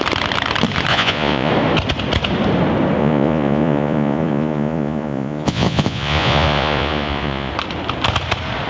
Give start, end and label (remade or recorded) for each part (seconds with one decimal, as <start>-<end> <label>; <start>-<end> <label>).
0.0-0.9 recorded; 0.9-1.5 remade; 1.5-3.0 recorded; 3.0-7.5 remade; 7.5-8.7 recorded